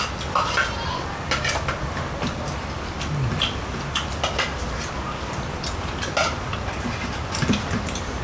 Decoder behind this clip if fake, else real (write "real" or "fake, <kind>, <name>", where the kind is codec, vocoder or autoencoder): real